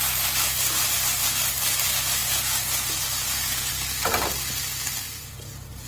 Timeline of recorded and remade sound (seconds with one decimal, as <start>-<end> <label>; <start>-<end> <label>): 0.0-2.2 recorded; 2.2-3.7 remade; 3.7-4.7 recorded; 4.7-5.9 remade